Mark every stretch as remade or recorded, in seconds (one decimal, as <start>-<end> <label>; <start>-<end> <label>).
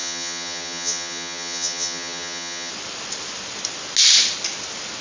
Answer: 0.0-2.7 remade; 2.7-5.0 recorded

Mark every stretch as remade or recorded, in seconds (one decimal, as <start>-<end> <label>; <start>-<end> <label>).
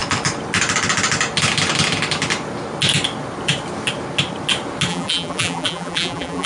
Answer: 0.0-4.9 recorded; 4.9-6.5 remade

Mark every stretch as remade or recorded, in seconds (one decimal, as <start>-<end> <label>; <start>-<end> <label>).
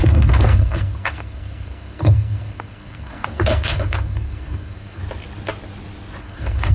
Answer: 0.0-5.0 remade; 5.0-6.2 recorded; 6.2-6.7 remade